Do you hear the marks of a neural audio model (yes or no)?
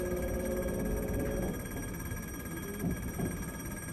no